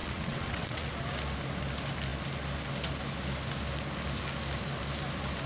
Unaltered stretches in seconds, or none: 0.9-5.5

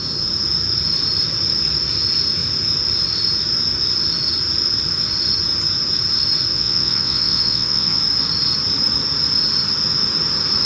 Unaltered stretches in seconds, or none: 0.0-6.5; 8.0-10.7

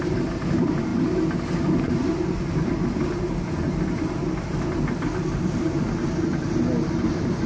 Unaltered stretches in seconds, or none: 0.0-7.5